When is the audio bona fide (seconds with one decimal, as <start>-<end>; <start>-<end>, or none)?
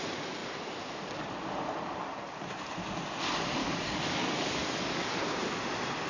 0.0-3.6; 5.2-6.1